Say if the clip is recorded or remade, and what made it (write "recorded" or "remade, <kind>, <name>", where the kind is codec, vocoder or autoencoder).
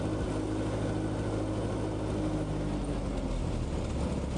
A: recorded